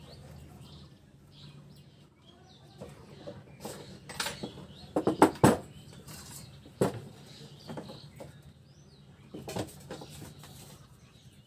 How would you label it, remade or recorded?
recorded